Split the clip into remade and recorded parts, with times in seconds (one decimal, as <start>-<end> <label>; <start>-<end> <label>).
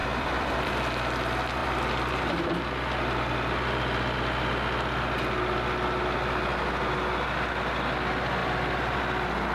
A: 0.0-0.7 remade; 0.7-1.6 recorded; 1.6-2.5 remade; 2.5-8.4 recorded; 8.4-9.0 remade; 9.0-9.5 recorded